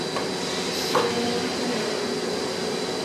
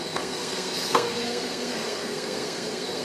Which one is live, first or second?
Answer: first